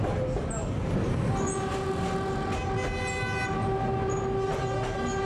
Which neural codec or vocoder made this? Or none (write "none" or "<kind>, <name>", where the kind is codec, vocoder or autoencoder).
none